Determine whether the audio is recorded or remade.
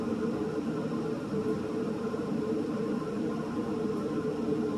recorded